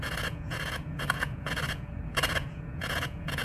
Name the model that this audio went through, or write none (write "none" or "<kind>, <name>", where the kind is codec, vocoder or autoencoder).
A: vocoder, Vocos